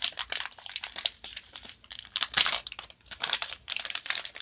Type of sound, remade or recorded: remade